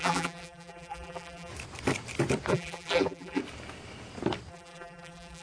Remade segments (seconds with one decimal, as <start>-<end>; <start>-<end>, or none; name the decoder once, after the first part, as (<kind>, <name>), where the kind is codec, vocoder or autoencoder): 0.0-1.5 (vocoder, BigVGAN v2); 2.5-3.4; 4.5-5.4